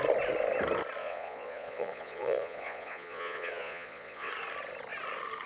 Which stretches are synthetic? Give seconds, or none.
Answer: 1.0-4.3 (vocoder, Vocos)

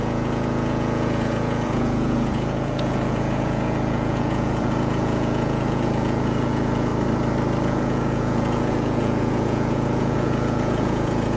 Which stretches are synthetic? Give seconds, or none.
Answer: 0.0-6.9 (vocoder, Vocos); 7.6-11.4

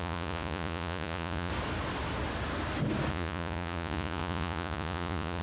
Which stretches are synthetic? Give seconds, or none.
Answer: 0.0-1.5 (vocoder, Vocos); 3.1-5.4

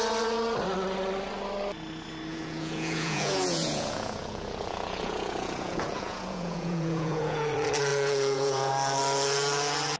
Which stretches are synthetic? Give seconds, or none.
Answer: 2.3-7.5 (vocoder, Vocos); 7.9-8.7

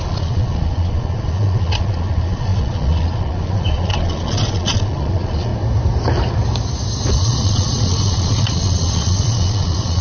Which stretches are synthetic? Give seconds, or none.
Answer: 0.0-5.5 (vocoder, Vocos); 7.1-10.0

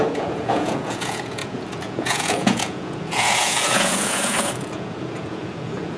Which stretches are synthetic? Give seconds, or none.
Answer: 0.0-6.0 (vocoder, Vocos)